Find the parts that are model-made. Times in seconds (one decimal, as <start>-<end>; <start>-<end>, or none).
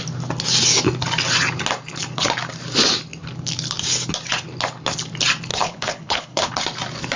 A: 5.5-6.5